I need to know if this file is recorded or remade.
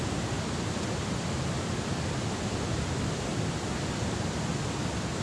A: recorded